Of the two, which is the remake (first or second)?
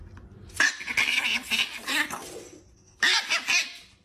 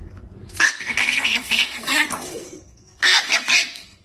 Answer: second